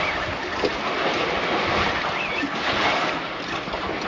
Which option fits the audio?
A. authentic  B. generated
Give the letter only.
A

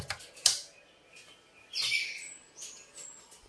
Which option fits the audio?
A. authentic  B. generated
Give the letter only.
A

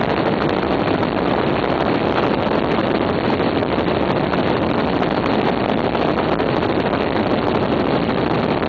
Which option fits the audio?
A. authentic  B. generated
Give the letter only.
B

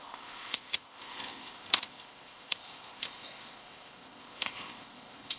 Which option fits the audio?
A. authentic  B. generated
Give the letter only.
B